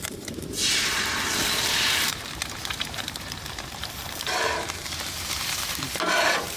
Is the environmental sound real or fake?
fake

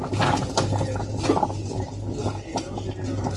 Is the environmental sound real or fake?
real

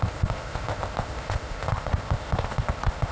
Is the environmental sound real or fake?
fake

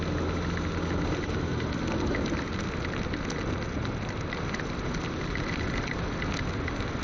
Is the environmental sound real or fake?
real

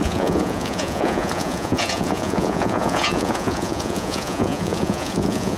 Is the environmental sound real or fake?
fake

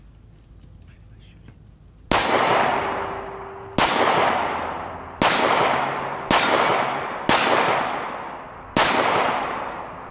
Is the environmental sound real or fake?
real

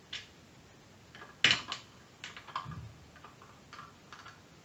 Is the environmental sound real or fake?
real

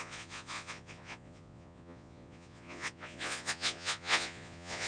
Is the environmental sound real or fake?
fake